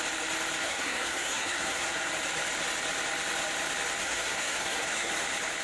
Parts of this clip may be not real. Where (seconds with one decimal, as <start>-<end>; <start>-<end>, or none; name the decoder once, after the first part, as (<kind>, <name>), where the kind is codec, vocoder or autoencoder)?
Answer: 0.6-2.1 (codec, SNAC); 4.0-5.1